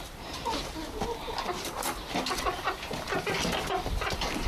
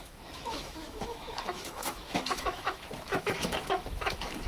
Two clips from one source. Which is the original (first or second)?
first